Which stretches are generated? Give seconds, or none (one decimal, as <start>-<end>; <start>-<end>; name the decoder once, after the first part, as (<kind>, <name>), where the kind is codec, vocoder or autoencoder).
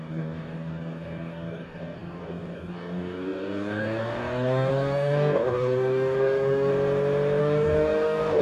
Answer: 0.0-6.7 (codec, DAC); 7.4-8.4